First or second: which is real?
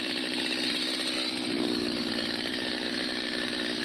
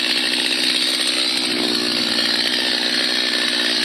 second